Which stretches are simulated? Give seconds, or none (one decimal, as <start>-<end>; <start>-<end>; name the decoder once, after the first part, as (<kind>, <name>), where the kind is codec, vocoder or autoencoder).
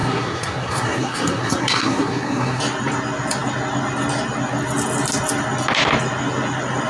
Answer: 0.0-2.6 (codec, SNAC)